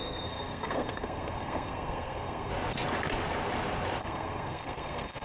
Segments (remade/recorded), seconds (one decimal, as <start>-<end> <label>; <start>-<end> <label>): 0.0-2.5 remade; 2.5-4.0 recorded; 4.0-5.2 remade